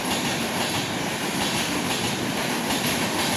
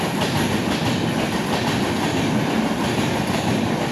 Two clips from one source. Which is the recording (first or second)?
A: first